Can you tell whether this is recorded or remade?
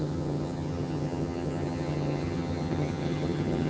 remade